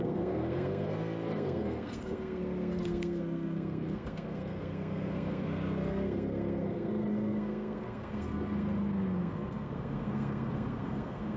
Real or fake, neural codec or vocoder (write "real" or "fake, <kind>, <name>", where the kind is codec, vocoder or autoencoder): fake, codec, SNAC